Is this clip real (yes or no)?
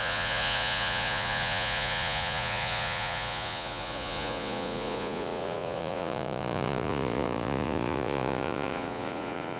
no